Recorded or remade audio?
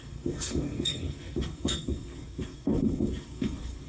remade